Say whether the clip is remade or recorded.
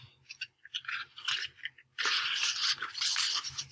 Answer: recorded